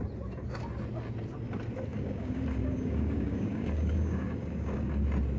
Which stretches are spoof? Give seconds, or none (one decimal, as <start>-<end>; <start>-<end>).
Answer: 1.9-5.0